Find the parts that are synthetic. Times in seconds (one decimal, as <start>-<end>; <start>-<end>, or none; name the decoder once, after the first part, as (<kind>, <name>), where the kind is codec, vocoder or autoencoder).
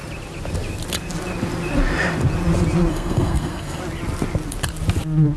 2.9-3.8 (codec, SNAC)